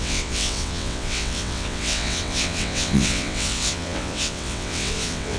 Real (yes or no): no